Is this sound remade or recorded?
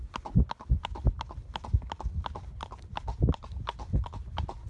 recorded